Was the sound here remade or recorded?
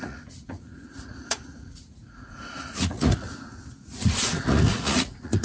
remade